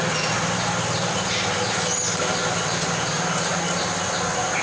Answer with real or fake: real